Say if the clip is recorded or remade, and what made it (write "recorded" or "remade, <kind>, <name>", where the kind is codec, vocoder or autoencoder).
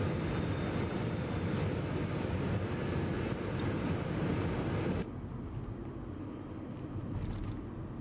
recorded